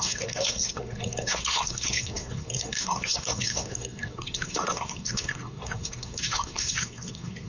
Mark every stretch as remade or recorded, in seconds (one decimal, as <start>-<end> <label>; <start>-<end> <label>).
0.0-7.5 remade

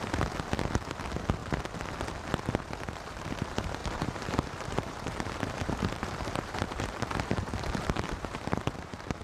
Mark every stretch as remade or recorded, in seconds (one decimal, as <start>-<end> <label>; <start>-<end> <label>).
0.0-3.8 recorded; 3.8-9.2 remade